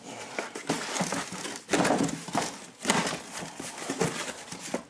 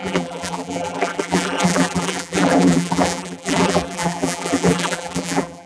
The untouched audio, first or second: first